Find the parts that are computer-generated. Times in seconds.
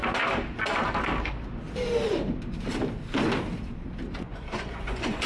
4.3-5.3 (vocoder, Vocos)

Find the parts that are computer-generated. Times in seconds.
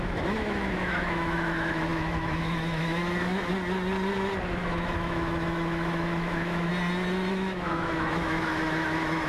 0.0-3.5 (autoencoder, DAC-VAE); 4.5-6.7; 7.3-9.3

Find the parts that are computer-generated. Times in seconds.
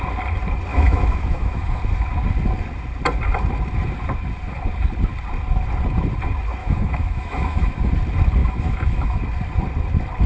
0.7-1.8 (autoencoder, DAC-VAE); 6.6-7.9; 8.4-9.2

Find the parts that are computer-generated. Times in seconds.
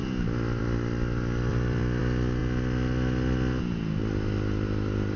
1.5-2.0 (vocoder, BigVGAN v2)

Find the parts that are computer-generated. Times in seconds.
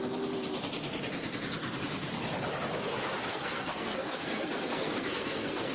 3.3-5.7 (codec, SNAC)